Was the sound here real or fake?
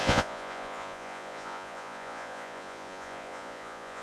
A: fake